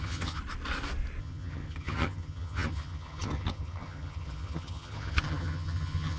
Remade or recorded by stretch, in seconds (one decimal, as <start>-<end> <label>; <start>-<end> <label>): 0.0-0.4 remade; 0.4-1.2 recorded; 1.2-6.2 remade